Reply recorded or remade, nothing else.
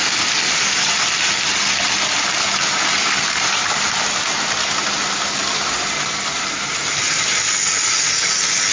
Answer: recorded